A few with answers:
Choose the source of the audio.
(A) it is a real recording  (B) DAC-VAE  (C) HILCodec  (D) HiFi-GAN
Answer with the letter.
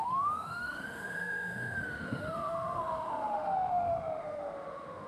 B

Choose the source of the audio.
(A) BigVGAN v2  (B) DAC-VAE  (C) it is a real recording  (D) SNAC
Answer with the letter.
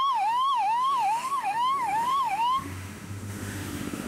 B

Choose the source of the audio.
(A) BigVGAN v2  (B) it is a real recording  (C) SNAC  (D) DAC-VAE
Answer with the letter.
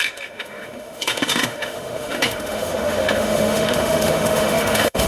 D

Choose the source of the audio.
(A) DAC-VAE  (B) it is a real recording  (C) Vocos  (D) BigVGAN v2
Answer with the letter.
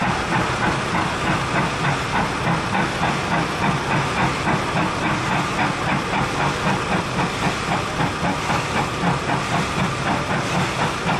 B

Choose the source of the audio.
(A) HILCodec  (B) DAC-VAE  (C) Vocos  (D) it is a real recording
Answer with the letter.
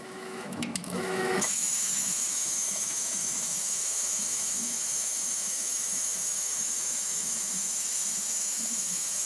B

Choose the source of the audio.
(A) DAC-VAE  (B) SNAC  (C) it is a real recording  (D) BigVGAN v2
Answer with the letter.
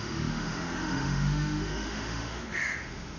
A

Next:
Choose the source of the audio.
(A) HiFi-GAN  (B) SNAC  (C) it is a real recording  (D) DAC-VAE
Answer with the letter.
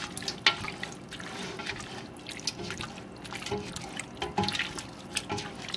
C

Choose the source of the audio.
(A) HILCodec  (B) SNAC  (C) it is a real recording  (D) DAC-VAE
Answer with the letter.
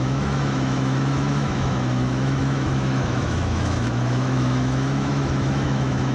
D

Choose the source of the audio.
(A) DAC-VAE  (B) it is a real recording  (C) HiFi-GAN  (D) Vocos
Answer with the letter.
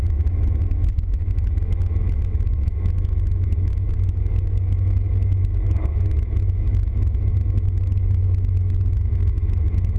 A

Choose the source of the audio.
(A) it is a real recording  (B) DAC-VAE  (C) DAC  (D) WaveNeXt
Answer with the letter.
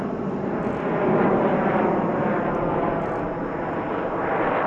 A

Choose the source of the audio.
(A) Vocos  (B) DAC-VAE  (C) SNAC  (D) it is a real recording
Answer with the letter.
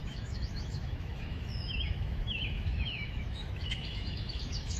B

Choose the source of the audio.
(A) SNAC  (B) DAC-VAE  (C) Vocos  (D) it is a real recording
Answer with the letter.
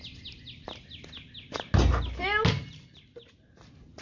D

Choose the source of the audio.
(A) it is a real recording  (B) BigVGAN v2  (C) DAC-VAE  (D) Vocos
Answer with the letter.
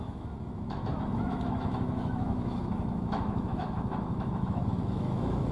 C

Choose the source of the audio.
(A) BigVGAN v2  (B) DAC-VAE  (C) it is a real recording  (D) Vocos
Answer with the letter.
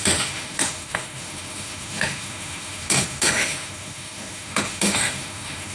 B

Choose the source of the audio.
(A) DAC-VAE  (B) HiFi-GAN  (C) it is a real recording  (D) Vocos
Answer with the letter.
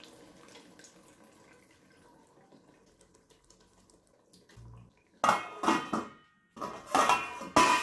C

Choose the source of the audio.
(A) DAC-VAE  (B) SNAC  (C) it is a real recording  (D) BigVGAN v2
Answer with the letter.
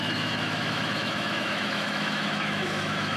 A